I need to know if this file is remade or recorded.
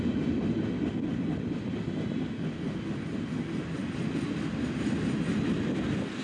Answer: recorded